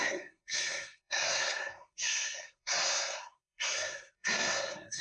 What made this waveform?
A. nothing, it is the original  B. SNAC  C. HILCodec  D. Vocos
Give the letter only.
B